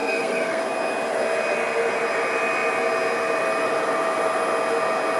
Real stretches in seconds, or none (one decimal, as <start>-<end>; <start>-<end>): 0.6-5.2

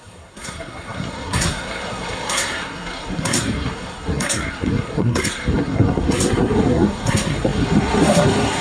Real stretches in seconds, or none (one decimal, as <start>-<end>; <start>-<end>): none

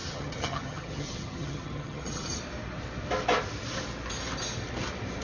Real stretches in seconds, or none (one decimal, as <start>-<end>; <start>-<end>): 2.4-5.2

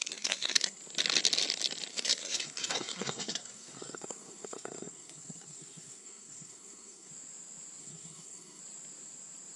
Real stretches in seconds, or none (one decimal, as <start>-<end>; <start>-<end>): 0.8-1.9; 7.1-7.8; 8.6-9.6